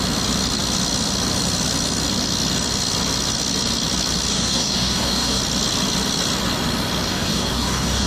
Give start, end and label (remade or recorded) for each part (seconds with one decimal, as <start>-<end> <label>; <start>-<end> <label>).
0.0-4.3 recorded; 4.3-5.4 remade; 5.4-7.1 recorded; 7.1-8.1 remade